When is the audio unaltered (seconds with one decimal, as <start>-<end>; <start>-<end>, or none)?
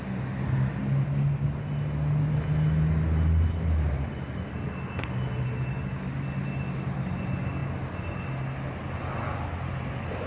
0.0-10.3